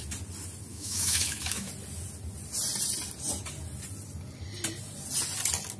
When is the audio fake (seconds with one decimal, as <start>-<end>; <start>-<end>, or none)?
0.7-1.7